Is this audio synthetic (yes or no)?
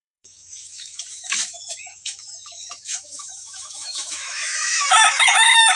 yes